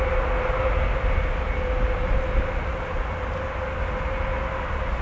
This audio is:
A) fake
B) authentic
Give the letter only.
B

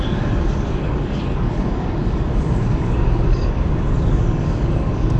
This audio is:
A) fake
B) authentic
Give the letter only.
A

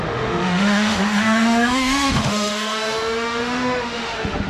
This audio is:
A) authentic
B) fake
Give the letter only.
B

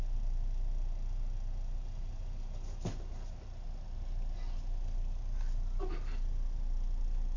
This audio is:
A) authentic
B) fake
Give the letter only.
A